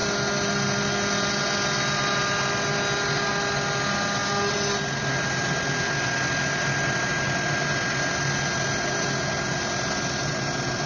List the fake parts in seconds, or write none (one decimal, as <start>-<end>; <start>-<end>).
none